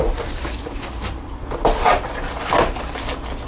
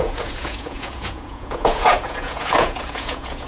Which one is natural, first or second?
first